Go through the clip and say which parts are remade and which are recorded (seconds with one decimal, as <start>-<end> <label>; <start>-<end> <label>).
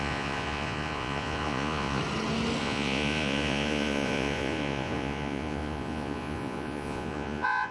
0.0-2.0 remade; 2.0-2.6 recorded; 2.6-7.7 remade